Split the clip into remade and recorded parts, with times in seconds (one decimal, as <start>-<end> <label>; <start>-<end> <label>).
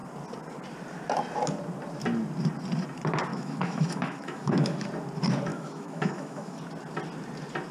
0.0-3.3 recorded; 3.3-4.9 remade; 4.9-5.5 recorded; 5.5-6.6 remade; 6.6-7.7 recorded